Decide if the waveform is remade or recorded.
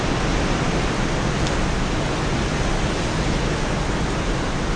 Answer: recorded